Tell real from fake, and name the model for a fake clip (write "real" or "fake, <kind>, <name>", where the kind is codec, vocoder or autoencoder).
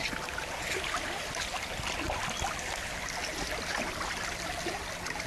real